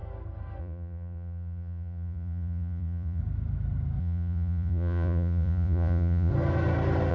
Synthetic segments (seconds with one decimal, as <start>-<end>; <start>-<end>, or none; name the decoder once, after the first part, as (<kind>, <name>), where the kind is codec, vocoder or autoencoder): 0.6-3.2 (vocoder, Vocos); 4.0-6.3